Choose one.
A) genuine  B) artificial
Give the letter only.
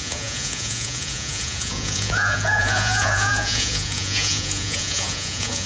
B